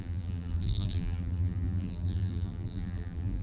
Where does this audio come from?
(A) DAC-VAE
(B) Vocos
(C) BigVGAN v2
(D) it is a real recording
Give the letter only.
C